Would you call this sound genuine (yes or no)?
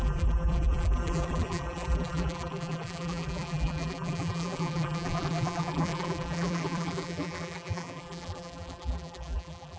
no